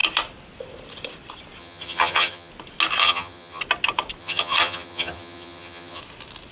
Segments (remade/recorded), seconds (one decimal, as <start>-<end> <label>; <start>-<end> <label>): 0.0-1.6 recorded; 1.6-2.5 remade; 2.5-3.0 recorded; 3.0-3.6 remade; 3.6-4.2 recorded; 4.2-6.0 remade; 6.0-6.5 recorded